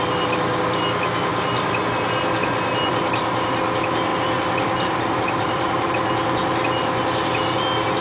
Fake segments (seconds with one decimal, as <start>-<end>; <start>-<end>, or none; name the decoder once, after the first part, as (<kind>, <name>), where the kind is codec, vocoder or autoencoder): 1.3-1.8 (vocoder, BigVGAN v2); 4.1-5.9